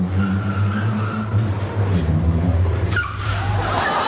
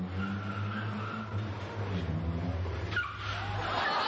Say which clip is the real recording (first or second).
second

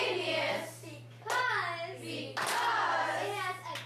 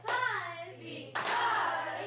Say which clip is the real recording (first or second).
first